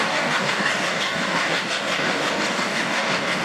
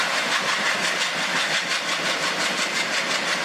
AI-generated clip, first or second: first